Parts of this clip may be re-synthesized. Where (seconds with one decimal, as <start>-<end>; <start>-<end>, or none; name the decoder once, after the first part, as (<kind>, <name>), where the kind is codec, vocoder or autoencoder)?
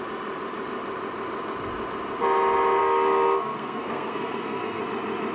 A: 2.8-4.8 (codec, SNAC)